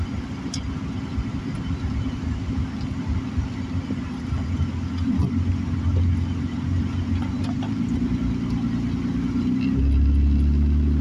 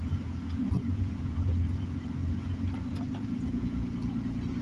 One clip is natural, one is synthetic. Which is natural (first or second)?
first